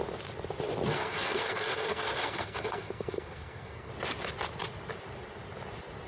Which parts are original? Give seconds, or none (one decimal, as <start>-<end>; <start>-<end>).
0.0-0.9; 3.9-6.1